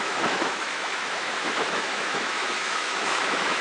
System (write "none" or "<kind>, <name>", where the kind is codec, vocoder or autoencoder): autoencoder, DAC-VAE